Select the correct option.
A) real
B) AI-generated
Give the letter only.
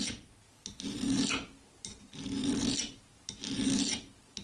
A